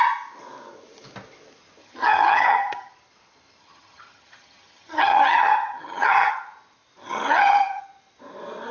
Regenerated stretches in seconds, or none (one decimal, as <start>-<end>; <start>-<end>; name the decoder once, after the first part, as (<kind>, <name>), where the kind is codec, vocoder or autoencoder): 1.8-2.9 (vocoder, HiFi-GAN); 3.6-6.3; 7.0-7.8